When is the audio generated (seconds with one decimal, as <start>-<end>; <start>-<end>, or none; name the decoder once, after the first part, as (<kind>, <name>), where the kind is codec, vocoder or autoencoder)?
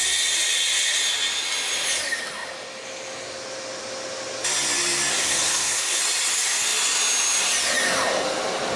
5.1-6.0 (codec, SNAC)